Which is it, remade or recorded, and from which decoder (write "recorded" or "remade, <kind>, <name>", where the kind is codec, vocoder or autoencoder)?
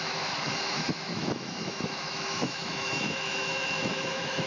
remade, autoencoder, DAC-VAE